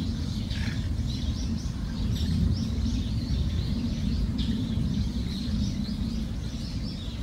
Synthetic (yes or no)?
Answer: no